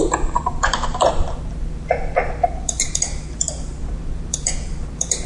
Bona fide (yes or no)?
no